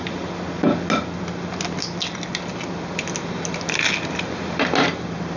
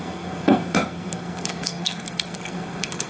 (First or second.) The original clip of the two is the first